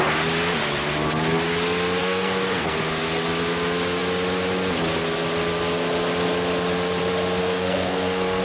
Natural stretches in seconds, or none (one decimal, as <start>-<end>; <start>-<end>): 0.0-2.0; 2.8-7.4